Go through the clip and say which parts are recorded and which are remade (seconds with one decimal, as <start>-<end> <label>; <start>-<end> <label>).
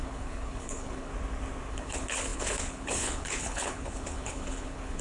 0.0-1.1 remade; 1.1-1.7 recorded; 1.7-5.0 remade